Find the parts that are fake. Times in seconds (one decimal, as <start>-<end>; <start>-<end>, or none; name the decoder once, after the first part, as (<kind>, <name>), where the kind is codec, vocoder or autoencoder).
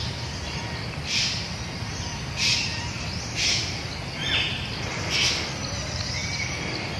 none